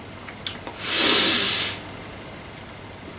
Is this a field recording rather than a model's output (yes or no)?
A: yes